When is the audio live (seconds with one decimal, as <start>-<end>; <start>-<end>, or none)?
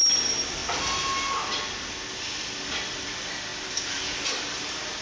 0.0-5.0